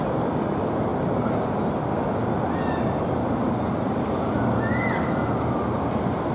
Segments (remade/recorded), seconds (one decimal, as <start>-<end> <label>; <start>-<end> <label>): 0.0-6.3 recorded